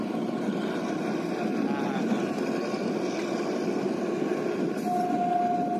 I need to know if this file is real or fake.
real